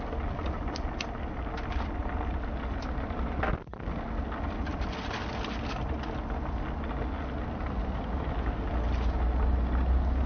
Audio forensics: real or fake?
real